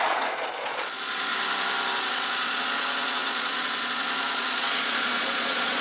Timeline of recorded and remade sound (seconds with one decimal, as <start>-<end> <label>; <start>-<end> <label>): 0.0-1.3 remade; 1.3-2.0 recorded; 2.0-5.8 remade